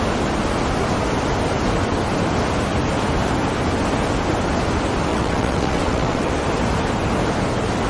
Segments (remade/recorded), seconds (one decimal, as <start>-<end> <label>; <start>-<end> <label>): 0.0-5.1 recorded; 5.1-6.3 remade; 6.3-7.9 recorded